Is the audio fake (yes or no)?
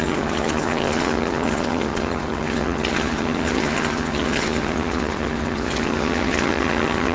yes